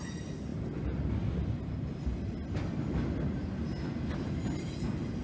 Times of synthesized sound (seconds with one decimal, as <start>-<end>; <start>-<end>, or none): none